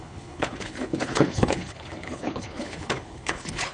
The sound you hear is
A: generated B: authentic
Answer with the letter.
A